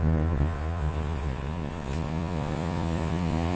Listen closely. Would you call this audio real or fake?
fake